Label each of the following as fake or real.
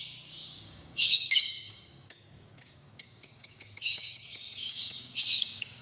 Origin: fake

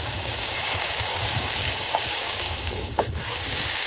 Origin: fake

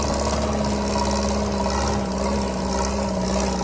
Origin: real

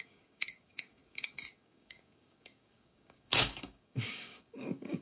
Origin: fake